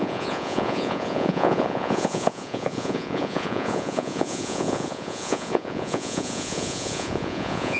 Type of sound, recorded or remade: remade